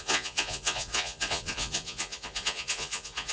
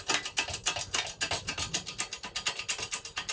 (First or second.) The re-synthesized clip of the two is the first